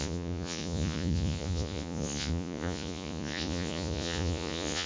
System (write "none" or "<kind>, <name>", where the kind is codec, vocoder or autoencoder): vocoder, Vocos